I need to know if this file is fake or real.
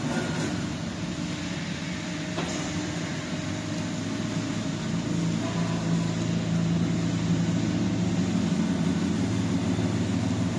real